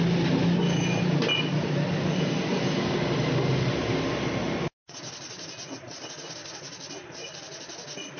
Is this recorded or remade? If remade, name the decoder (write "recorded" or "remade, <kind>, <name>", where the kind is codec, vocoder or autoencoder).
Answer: recorded